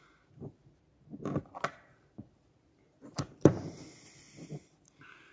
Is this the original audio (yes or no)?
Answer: yes